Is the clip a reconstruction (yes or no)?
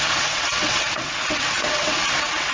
yes